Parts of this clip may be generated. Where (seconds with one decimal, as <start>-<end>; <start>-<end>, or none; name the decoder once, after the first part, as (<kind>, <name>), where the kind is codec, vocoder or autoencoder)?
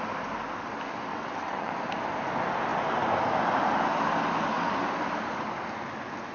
1.1-1.7 (vocoder, WaveNeXt)